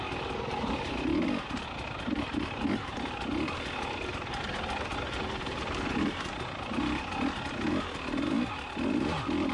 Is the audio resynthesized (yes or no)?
no